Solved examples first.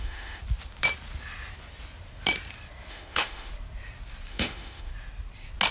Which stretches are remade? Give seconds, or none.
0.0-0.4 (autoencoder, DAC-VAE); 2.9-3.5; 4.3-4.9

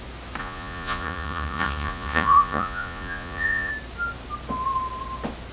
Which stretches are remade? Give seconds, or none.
0.4-3.7 (vocoder, Vocos)

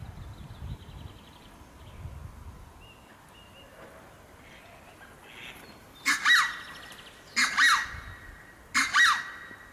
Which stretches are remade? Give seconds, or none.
none

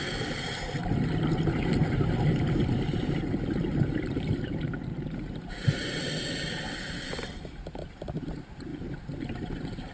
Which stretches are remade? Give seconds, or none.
none

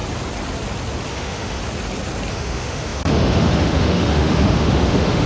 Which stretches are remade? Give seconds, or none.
1.1-1.6 (autoencoder, DAC-VAE); 2.3-5.3

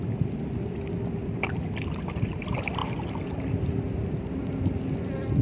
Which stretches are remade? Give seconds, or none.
none